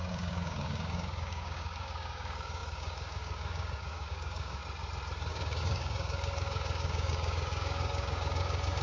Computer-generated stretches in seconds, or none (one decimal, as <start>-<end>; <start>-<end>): 0.0-4.6; 5.3-8.8